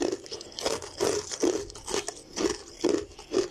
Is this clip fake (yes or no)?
no